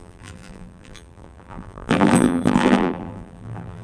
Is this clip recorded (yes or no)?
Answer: no